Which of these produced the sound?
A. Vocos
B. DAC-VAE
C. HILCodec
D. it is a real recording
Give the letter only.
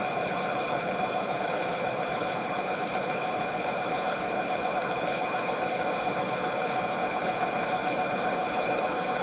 C